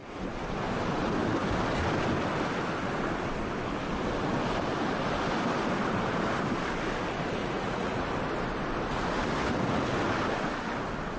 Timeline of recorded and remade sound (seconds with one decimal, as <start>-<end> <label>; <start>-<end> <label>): 0.0-7.4 recorded; 7.4-8.1 remade; 8.1-11.2 recorded